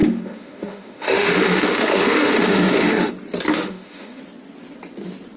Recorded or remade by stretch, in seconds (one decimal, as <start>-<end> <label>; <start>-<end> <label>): 0.0-3.1 remade; 3.1-3.5 recorded; 3.5-4.2 remade; 4.2-5.4 recorded